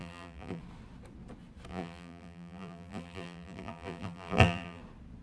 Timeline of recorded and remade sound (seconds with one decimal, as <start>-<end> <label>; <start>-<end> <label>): 0.0-0.6 remade; 0.6-1.7 recorded; 1.7-4.8 remade; 4.8-5.2 recorded

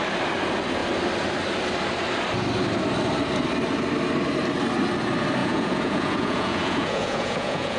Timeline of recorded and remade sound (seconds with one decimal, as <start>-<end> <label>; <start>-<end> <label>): 0.0-5.4 recorded; 5.4-7.8 remade

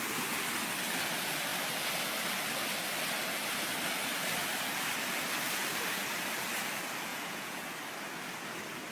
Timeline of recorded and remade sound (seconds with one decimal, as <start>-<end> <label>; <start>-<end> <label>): 0.0-7.1 recorded; 7.1-7.6 remade; 7.6-8.9 recorded

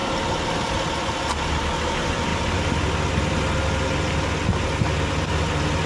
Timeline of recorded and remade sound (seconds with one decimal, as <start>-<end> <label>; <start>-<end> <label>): 0.0-5.9 recorded

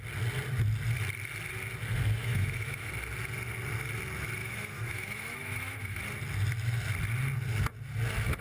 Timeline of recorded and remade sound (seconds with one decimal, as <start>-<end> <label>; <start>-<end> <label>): 0.0-2.2 recorded; 2.2-2.9 remade; 2.9-4.4 recorded; 4.4-6.0 remade; 6.0-8.4 recorded